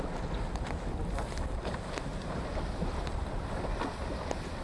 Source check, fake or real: real